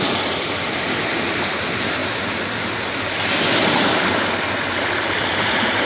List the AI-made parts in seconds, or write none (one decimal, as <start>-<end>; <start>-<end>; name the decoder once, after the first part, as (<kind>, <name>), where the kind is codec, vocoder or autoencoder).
0.0-2.0 (vocoder, BigVGAN v2); 5.5-5.9